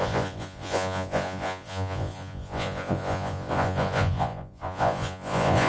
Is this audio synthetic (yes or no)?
yes